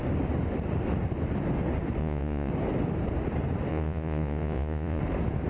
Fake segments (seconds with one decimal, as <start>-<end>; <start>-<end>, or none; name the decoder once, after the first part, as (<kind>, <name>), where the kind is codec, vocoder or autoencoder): 2.0-2.5 (vocoder, Vocos); 3.7-5.0